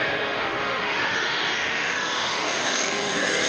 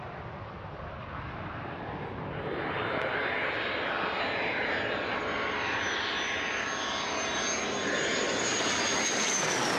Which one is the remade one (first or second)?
first